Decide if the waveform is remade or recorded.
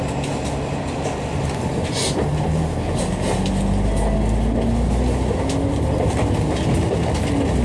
recorded